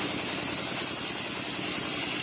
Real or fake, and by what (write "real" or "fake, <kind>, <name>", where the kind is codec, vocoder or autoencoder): real